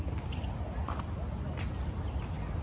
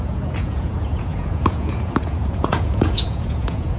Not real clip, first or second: second